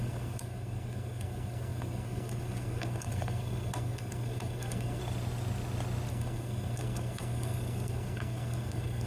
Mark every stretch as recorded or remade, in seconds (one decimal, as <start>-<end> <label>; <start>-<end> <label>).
0.0-5.0 remade; 5.0-6.1 recorded; 6.1-9.1 remade